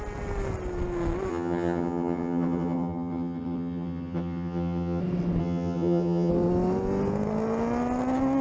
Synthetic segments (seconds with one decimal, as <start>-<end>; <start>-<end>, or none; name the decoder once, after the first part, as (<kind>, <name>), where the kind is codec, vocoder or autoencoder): 1.3-5.0 (vocoder, HiFi-GAN); 5.4-6.3

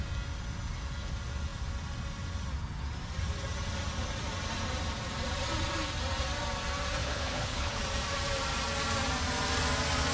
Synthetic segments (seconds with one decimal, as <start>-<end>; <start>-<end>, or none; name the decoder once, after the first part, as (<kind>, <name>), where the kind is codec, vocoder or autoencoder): 7.0-7.8 (codec, HILCodec)